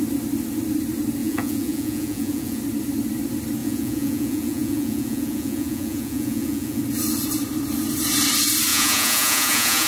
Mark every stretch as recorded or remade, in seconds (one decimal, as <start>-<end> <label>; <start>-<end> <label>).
0.0-1.2 recorded; 1.2-2.6 remade; 2.6-3.6 recorded; 3.6-6.8 remade; 6.8-8.7 recorded; 8.7-9.9 remade